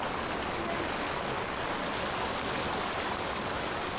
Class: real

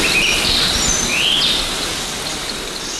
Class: real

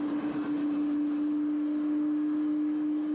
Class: real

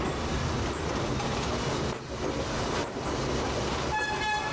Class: real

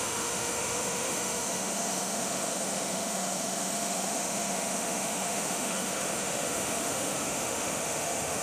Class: fake